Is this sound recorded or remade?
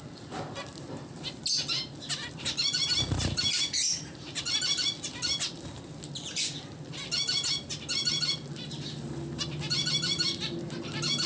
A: recorded